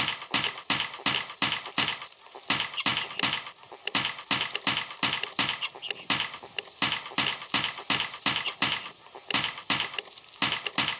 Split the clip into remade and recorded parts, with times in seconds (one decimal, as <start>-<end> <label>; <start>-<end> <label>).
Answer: 0.0-11.0 recorded